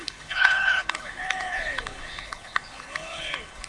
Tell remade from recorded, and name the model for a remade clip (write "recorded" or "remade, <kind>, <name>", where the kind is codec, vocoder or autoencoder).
remade, codec, HILCodec